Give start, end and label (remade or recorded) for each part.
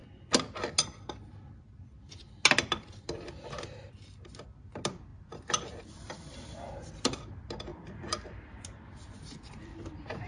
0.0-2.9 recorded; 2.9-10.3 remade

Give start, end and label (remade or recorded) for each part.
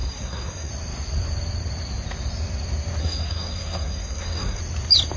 0.0-0.7 remade; 0.7-3.0 recorded; 3.0-4.6 remade; 4.6-5.2 recorded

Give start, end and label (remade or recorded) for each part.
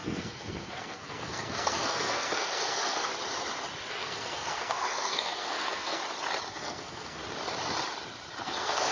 0.0-3.1 remade; 3.1-3.9 recorded; 3.9-6.0 remade; 6.0-6.5 recorded; 6.5-7.2 remade; 7.2-8.4 recorded; 8.4-8.9 remade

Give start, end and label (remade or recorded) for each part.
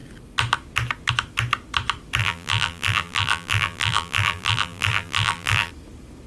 0.0-2.2 recorded; 2.2-5.7 remade; 5.7-6.3 recorded